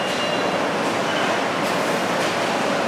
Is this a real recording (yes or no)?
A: yes